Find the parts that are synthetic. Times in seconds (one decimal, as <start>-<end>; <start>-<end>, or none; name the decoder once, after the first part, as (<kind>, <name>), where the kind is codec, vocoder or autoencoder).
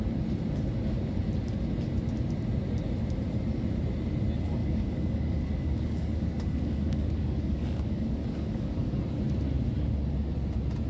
4.6-9.0 (codec, DAC)